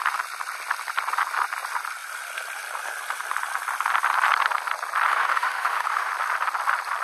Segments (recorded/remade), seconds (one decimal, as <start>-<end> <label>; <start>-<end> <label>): 0.0-5.1 recorded; 5.1-6.1 remade; 6.1-7.0 recorded